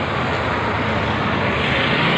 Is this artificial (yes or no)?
no